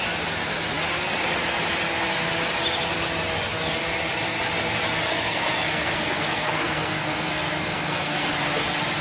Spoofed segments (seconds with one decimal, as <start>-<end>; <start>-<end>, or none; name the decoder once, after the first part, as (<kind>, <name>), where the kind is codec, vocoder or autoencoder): 5.1-8.3 (codec, SNAC)